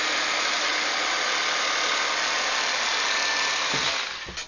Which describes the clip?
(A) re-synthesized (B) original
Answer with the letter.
B